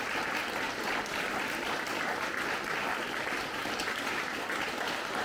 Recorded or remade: recorded